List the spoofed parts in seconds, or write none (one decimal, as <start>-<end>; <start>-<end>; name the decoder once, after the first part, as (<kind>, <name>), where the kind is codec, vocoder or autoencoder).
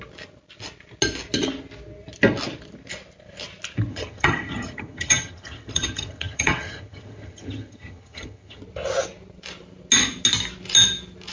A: 3.9-8.6 (vocoder, HiFi-GAN)